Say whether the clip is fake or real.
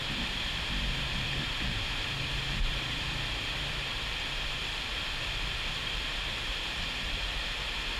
fake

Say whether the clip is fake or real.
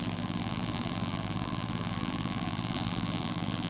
fake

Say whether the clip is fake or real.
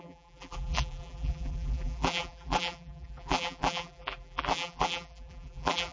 fake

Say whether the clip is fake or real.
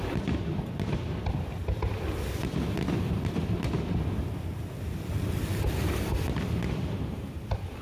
fake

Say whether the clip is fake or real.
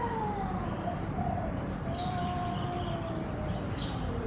fake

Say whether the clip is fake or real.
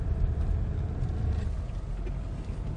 real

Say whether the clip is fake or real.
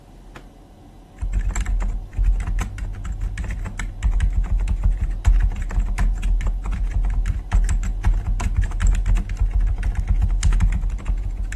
real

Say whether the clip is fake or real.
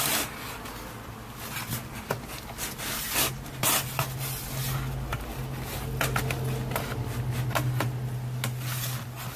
real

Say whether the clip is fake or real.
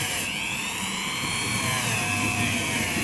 fake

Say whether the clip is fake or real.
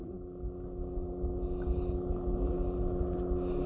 real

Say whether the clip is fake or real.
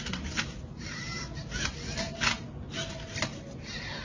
real